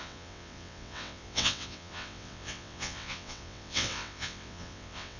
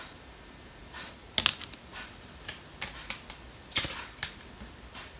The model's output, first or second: first